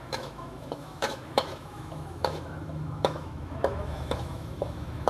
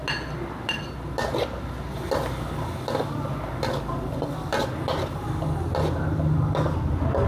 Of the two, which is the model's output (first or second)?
first